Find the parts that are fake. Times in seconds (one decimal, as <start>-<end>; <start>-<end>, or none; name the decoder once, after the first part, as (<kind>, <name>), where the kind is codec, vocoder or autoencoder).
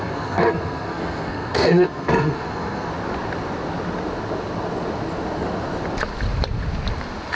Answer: 0.0-2.9 (codec, SNAC)